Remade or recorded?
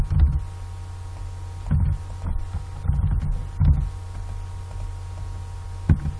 recorded